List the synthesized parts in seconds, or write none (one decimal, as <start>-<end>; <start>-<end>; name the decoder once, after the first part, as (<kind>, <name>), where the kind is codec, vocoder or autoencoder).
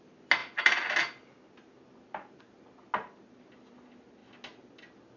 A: none